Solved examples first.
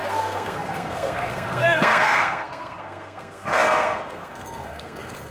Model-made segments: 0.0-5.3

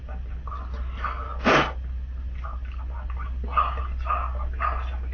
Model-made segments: none

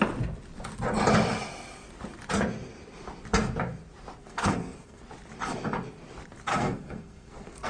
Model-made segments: 4.2-5.0; 6.5-7.7

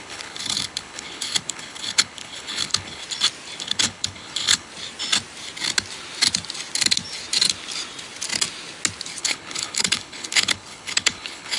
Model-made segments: 0.0-3.0; 3.6-4.7; 9.2-11.6

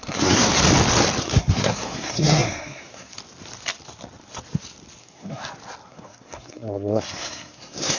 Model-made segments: 0.0-0.5; 1.2-3.1; 5.0-5.4; 5.9-8.0

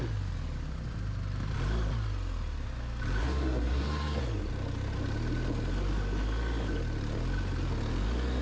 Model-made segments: 3.2-4.2